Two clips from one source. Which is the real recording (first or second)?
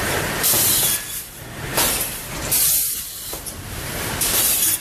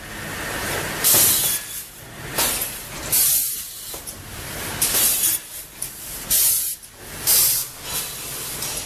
second